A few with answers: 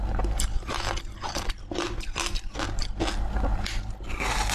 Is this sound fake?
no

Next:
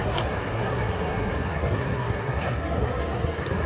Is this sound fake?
yes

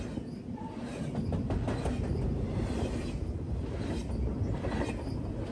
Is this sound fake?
no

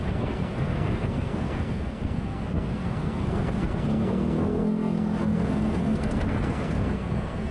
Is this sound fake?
yes